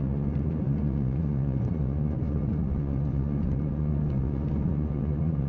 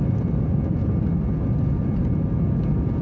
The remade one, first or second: first